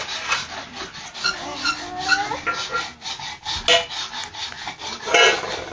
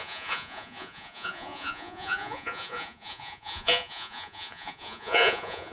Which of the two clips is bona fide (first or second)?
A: first